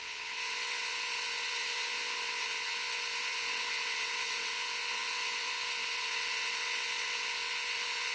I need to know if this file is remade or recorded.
remade